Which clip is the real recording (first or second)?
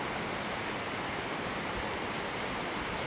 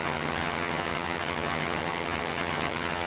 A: first